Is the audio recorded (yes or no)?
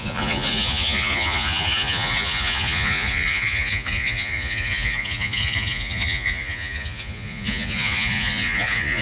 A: no